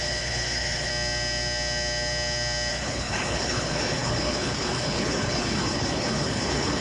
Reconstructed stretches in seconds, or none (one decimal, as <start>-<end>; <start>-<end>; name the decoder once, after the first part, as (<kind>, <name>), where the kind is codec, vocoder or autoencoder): 0.0-0.9 (codec, HILCodec); 2.7-6.8